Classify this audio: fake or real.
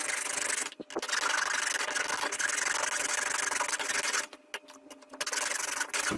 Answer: real